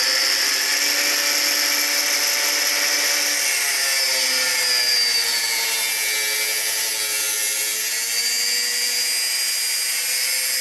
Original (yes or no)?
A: yes